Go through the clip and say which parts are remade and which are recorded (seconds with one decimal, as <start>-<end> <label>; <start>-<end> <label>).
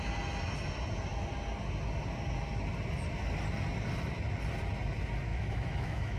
0.0-5.3 recorded; 5.3-6.2 remade